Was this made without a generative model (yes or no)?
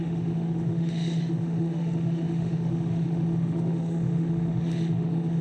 no